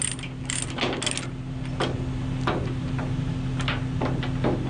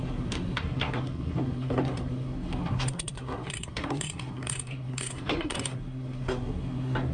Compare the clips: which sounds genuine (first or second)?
first